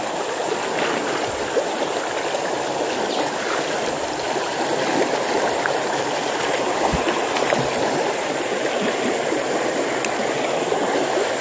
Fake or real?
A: real